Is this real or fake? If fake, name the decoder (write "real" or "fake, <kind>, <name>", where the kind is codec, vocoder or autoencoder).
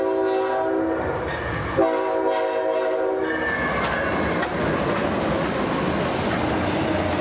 real